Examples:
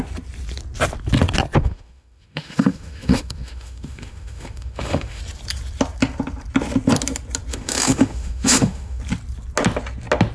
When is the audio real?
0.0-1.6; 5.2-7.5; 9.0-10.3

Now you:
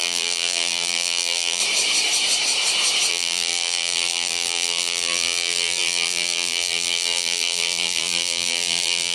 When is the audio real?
1.6-3.1

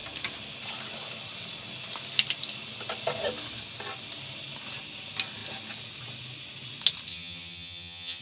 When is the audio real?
0.0-7.1

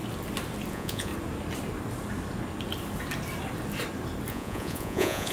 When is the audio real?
0.0-0.7; 1.1-4.3

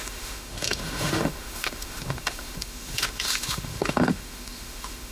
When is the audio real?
none

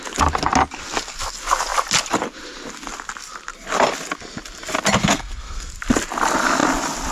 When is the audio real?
0.0-5.0; 5.7-7.1

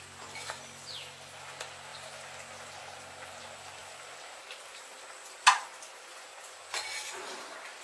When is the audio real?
0.0-6.1; 6.9-7.8